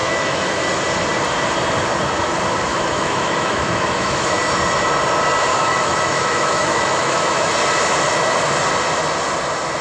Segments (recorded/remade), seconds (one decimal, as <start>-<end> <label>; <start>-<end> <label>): 0.0-0.6 remade; 0.6-2.7 recorded; 2.7-4.4 remade; 4.4-5.5 recorded; 5.5-7.5 remade; 7.5-9.8 recorded